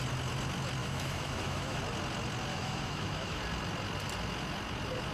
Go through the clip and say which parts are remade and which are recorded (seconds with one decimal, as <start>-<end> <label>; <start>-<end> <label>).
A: 0.0-0.8 recorded; 0.8-1.8 remade; 1.8-2.5 recorded; 2.5-3.4 remade; 3.4-5.1 recorded

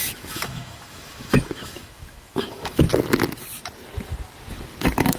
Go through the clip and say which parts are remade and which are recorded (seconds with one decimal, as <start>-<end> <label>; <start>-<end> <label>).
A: 0.0-2.9 remade; 2.9-5.2 recorded

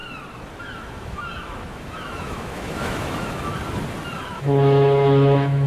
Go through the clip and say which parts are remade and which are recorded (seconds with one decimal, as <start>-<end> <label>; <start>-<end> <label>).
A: 0.0-0.6 recorded; 0.6-3.5 remade; 3.5-4.3 recorded; 4.3-5.7 remade

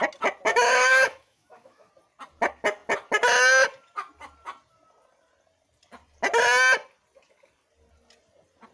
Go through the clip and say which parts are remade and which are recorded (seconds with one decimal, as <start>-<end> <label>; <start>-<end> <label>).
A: 0.0-0.5 recorded; 0.5-1.9 remade; 1.9-8.7 recorded

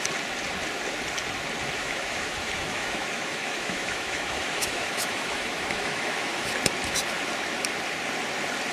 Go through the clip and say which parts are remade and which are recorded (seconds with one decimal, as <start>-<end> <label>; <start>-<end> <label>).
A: 0.0-1.8 recorded; 1.8-6.5 remade; 6.5-8.7 recorded

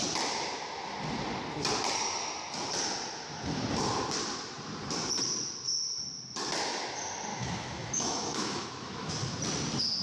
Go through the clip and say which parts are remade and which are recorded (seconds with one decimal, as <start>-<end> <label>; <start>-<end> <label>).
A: 0.0-7.3 recorded; 7.3-9.1 remade; 9.1-10.0 recorded

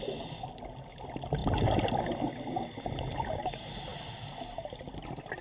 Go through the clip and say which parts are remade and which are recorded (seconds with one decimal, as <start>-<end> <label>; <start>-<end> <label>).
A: 0.0-5.4 recorded

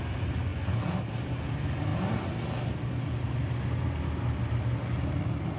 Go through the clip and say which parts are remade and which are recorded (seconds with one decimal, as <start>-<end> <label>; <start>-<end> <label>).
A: 0.0-5.6 recorded